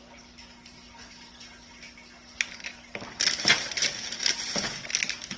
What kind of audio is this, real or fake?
real